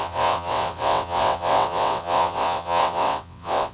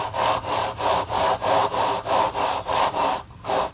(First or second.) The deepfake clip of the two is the first